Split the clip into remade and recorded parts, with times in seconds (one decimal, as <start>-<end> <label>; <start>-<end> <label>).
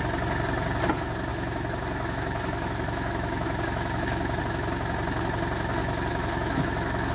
0.0-1.3 recorded; 1.3-4.4 remade; 4.4-5.8 recorded; 5.8-7.1 remade